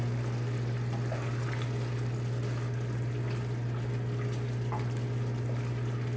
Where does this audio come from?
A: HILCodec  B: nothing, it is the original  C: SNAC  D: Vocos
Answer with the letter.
B